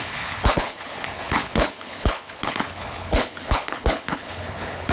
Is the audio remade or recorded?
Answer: remade